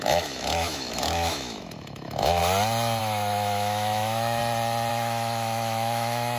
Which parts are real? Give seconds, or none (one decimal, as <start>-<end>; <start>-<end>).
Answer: 2.4-3.0; 4.4-4.9